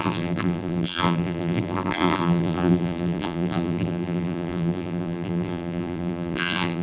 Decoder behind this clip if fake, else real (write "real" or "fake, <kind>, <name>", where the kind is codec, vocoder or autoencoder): fake, vocoder, BigVGAN v2